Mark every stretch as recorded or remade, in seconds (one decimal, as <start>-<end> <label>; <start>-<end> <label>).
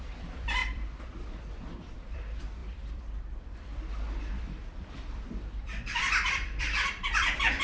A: 0.0-7.6 remade